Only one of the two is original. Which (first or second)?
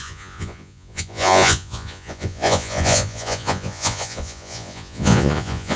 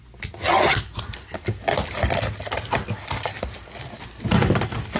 second